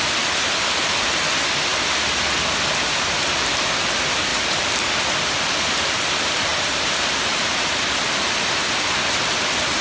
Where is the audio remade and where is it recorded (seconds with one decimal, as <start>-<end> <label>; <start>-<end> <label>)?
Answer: 0.0-4.3 recorded; 4.3-4.9 remade; 4.9-6.5 recorded; 6.5-7.7 remade; 7.7-9.8 recorded